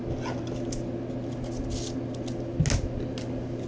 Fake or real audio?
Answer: real